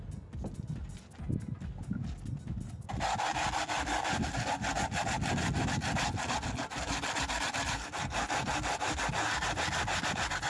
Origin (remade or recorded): recorded